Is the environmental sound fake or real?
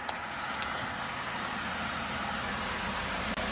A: real